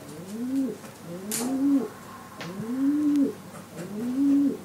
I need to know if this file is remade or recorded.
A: recorded